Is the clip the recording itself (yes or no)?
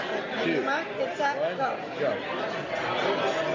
yes